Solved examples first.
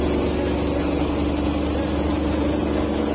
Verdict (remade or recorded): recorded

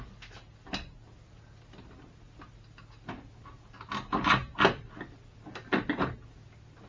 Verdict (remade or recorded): recorded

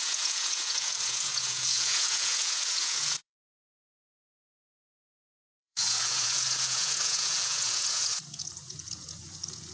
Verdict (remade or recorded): remade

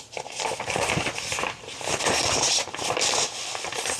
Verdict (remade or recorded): recorded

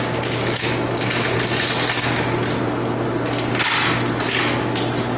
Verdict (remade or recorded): recorded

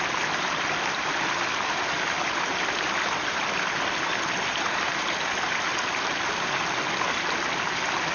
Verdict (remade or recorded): recorded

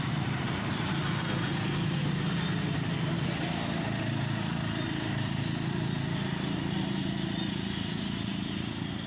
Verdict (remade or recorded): recorded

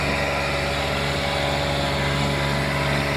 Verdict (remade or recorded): recorded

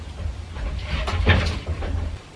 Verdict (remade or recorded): remade